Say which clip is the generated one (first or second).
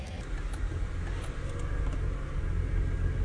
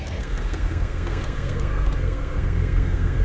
second